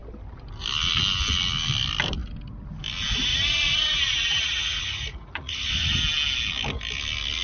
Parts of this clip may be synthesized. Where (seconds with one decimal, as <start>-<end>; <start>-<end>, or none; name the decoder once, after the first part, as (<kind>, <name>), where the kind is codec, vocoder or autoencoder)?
3.3-6.0 (vocoder, Vocos)